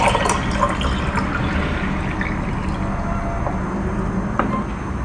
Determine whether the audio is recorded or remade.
recorded